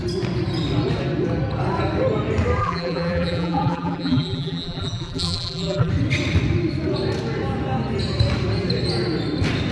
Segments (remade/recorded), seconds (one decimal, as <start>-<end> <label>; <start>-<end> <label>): 0.0-2.6 recorded; 2.6-5.9 remade; 5.9-9.7 recorded